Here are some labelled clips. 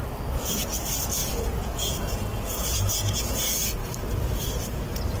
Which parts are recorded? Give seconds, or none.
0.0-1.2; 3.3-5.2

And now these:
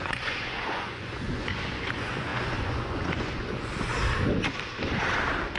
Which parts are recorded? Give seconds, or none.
3.9-5.6

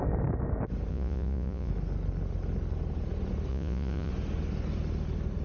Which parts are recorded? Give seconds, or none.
0.0-0.9; 1.7-3.5; 4.1-5.4

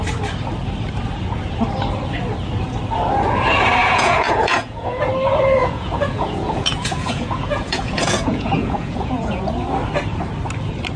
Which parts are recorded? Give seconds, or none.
0.0-3.8; 5.1-5.6; 9.4-11.0

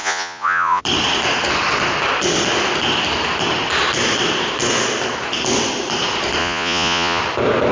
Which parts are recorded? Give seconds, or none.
0.8-6.4; 7.2-7.7

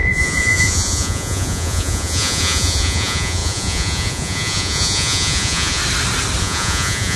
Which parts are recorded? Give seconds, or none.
5.8-6.4

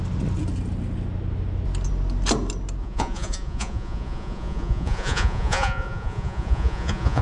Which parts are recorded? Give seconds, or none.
0.0-2.8